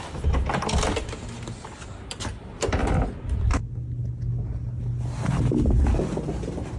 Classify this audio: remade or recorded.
recorded